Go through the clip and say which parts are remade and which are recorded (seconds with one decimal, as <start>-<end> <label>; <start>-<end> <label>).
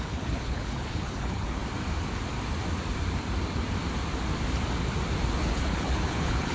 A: 0.0-1.6 remade; 1.6-5.4 recorded; 5.4-6.5 remade